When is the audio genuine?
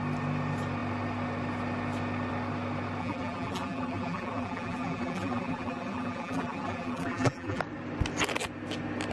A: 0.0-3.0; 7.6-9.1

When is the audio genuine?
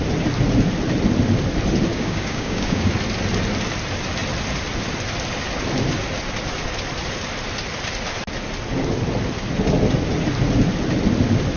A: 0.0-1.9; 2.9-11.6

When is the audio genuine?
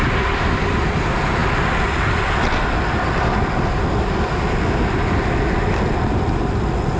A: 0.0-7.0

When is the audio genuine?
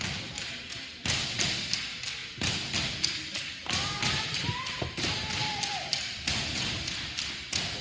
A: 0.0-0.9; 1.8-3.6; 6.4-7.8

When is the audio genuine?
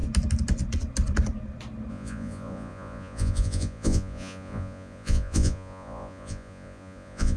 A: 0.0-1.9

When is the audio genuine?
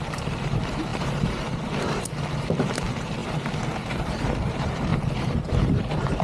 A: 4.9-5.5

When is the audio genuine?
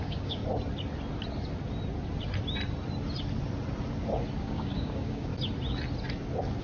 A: 0.4-4.4; 5.3-6.6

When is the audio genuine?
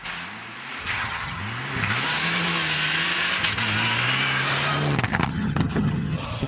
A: 0.0-0.8; 1.4-5.3